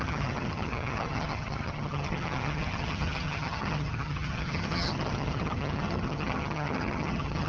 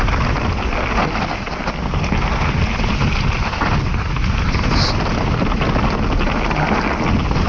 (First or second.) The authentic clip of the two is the second